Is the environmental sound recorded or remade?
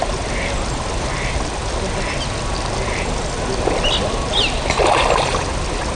recorded